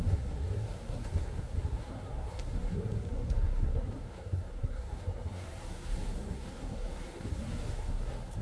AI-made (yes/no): yes